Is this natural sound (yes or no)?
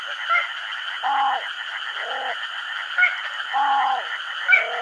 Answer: yes